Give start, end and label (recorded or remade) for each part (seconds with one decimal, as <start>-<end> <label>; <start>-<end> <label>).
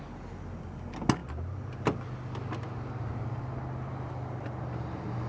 0.0-5.3 recorded